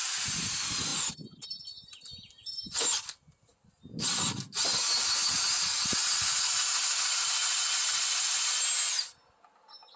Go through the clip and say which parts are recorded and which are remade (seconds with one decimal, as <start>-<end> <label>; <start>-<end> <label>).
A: 0.0-0.9 recorded; 0.9-3.7 remade; 3.7-10.0 recorded